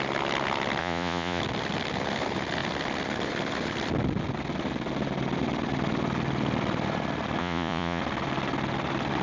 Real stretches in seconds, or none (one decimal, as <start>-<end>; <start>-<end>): 0.0-0.8; 1.4-7.4; 8.0-9.2